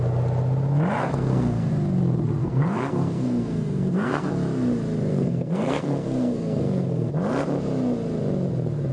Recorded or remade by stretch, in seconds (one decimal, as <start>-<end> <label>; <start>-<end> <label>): 0.0-1.0 recorded; 1.0-1.7 remade; 1.7-2.4 recorded; 2.4-4.3 remade; 4.3-5.1 recorded; 5.1-7.1 remade; 7.1-8.9 recorded